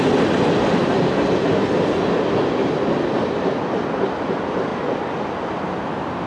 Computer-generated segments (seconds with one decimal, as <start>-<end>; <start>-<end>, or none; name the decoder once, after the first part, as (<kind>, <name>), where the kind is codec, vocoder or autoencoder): none